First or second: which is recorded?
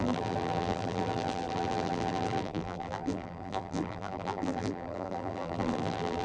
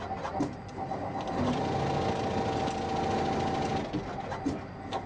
second